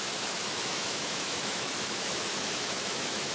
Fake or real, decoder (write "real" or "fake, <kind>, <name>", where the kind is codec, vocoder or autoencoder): fake, autoencoder, DAC-VAE